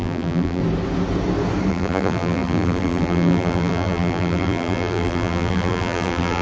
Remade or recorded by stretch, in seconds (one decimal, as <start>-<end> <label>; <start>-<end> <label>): 0.0-0.6 remade; 0.6-1.7 recorded; 1.7-6.4 remade